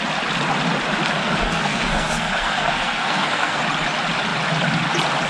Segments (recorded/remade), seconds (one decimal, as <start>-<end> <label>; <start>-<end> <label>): 0.0-1.2 recorded; 1.2-3.6 remade; 3.6-5.3 recorded